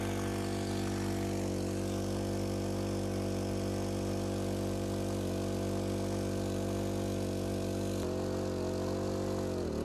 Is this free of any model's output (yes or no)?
yes